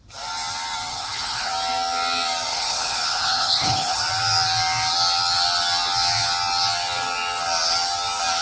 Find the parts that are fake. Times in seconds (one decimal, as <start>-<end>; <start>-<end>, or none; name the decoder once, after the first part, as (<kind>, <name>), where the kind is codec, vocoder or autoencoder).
0.9-1.5 (codec, HILCodec); 2.5-4.0